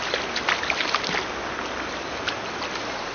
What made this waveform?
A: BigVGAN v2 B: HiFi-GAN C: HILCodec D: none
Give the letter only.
D